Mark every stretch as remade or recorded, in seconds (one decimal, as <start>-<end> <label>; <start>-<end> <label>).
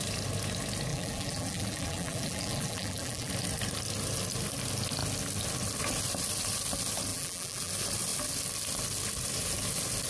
0.0-0.9 recorded; 0.9-3.3 remade; 3.3-7.1 recorded; 7.1-7.7 remade; 7.7-10.1 recorded